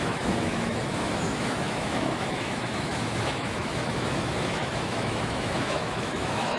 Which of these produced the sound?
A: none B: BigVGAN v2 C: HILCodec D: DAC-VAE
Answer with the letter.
D